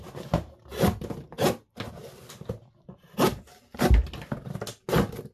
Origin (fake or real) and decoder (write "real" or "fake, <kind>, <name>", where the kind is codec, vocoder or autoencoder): real